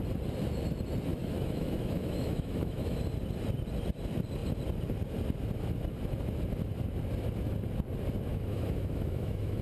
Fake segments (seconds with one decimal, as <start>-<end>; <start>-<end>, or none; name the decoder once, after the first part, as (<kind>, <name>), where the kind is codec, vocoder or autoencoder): 1.1-3.0 (autoencoder, DAC-VAE); 8.3-9.6